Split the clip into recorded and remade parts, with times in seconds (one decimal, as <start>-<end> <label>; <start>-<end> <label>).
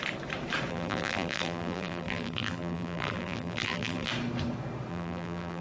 0.0-0.7 recorded; 0.7-4.1 remade; 4.1-4.9 recorded; 4.9-5.6 remade